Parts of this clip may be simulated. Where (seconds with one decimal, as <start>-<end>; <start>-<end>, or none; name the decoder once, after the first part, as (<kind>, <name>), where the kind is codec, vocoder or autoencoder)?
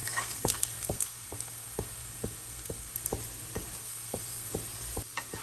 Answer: 0.0-3.1 (codec, SNAC); 3.8-4.5